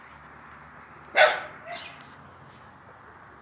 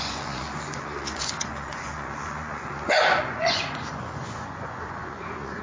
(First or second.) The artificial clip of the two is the second